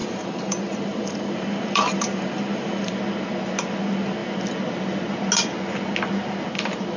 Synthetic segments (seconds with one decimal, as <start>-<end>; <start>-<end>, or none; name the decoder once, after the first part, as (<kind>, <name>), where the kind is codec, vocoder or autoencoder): 0.0-2.9 (vocoder, BigVGAN v2)